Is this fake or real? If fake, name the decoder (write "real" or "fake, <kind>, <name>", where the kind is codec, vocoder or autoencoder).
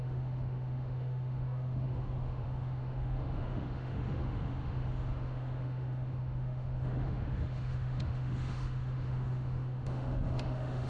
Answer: fake, autoencoder, DAC-VAE